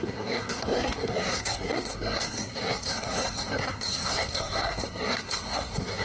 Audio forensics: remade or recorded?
remade